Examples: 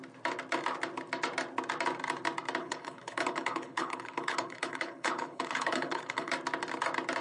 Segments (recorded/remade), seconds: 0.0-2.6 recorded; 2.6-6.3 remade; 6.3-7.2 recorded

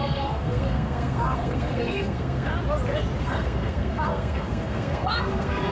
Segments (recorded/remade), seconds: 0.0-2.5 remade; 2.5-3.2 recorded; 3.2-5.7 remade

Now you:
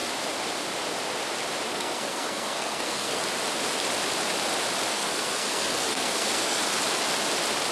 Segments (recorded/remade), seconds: 0.0-1.7 recorded; 1.7-3.2 remade; 3.2-4.9 recorded; 4.9-6.6 remade; 6.6-7.7 recorded